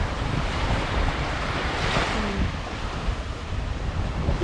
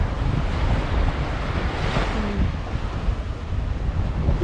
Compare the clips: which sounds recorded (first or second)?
second